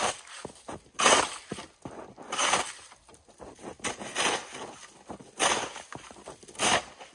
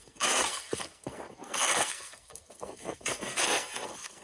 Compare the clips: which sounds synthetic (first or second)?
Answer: second